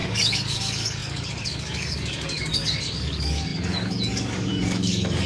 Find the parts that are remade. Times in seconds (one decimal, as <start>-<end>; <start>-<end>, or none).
0.0-5.3